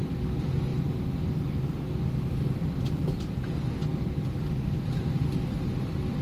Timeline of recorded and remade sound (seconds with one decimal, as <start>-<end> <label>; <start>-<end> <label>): 0.0-6.2 recorded